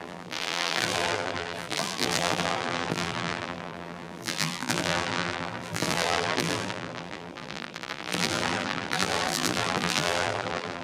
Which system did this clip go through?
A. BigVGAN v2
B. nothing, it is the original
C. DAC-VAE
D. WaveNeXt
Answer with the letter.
A